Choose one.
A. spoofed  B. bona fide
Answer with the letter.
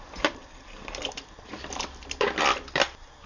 A